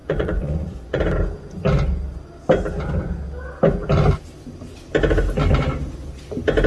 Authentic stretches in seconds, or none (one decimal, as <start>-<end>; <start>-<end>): 1.0-6.7